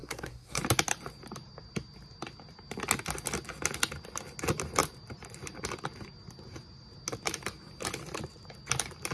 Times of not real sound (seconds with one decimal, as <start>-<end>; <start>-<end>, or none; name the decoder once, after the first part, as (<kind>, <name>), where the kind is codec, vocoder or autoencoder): 0.0-0.6 (codec, SNAC)